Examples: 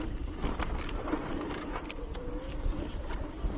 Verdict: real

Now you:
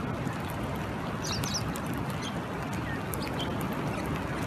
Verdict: real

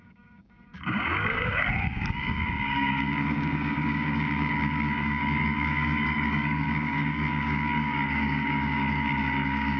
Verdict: fake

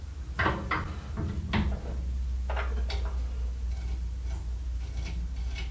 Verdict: real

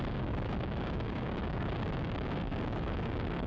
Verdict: fake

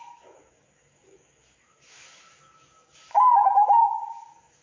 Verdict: fake